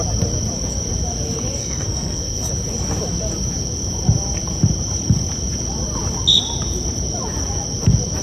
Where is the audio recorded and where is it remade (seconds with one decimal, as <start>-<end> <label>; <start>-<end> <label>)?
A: 0.0-1.6 recorded; 1.6-2.5 remade; 2.5-8.2 recorded